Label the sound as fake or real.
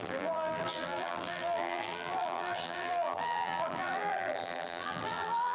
fake